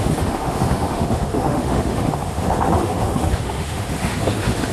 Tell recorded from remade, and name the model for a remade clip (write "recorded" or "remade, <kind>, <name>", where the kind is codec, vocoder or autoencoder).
remade, autoencoder, DAC-VAE